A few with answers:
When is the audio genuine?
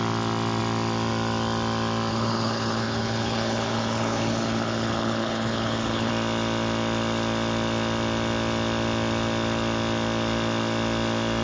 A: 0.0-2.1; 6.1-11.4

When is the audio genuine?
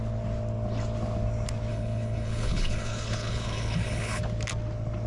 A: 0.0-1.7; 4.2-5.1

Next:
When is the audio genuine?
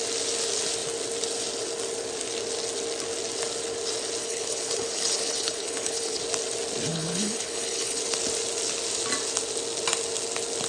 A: 0.0-4.2; 6.2-6.9; 8.0-10.7